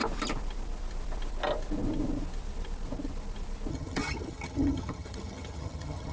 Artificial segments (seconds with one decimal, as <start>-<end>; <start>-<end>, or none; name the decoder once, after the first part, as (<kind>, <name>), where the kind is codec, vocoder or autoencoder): 3.7-6.1 (vocoder, HiFi-GAN)